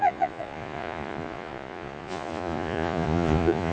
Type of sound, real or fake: fake